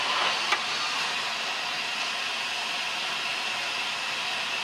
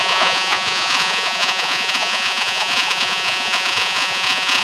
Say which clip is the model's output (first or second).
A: second